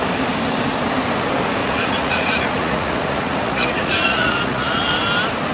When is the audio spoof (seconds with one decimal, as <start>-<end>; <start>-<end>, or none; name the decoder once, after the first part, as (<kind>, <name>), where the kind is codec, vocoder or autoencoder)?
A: 1.6-4.9 (vocoder, Vocos)